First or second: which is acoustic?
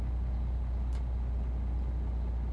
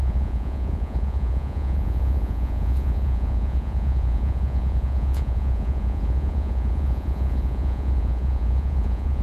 first